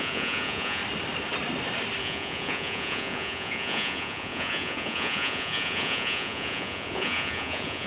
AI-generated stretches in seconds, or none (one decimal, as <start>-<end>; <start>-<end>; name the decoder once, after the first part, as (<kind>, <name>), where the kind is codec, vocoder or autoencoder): 0.0-0.8 (vocoder, Vocos); 2.0-7.9